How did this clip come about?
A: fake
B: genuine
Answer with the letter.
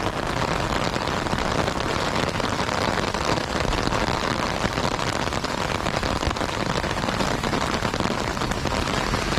B